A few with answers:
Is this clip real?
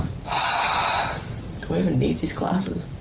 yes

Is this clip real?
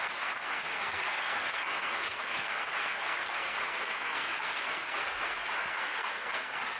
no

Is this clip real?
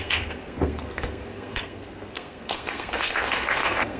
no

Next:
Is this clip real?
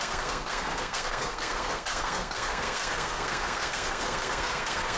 no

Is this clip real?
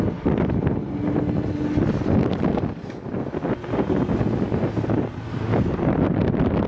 yes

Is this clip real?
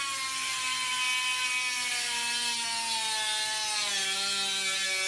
yes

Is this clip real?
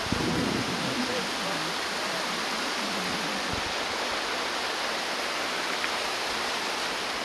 yes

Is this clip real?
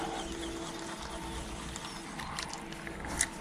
yes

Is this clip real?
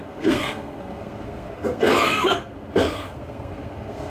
no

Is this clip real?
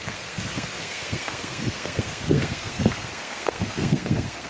no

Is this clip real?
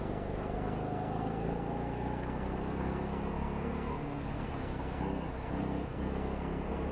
no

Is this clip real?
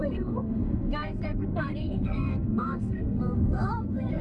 no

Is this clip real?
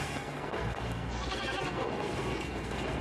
no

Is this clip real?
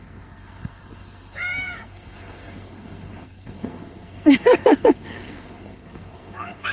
no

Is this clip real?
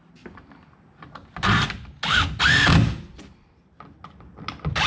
yes